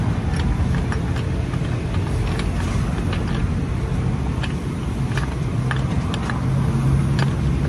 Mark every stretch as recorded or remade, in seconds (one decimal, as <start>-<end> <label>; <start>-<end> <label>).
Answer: 0.0-3.4 recorded; 3.4-6.4 remade; 6.4-7.7 recorded